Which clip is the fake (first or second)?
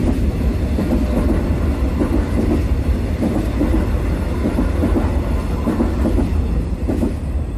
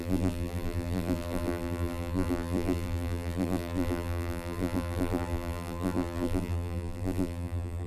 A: second